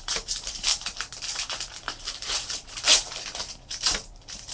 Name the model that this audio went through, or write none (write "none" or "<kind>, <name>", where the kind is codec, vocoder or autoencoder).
vocoder, BigVGAN v2